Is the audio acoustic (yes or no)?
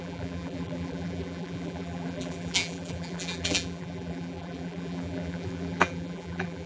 no